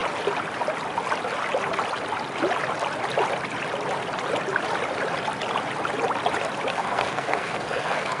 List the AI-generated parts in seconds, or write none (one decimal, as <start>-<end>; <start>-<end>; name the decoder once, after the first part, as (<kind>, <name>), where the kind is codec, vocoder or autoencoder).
6.7-8.2 (codec, SNAC)